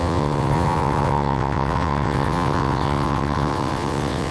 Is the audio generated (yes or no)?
yes